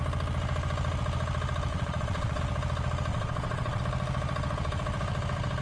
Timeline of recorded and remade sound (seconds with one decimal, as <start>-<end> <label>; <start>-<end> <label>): 0.0-1.7 recorded; 1.7-2.4 remade; 2.4-3.1 recorded; 3.1-3.8 remade; 3.8-5.6 recorded